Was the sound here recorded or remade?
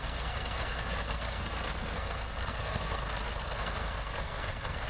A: remade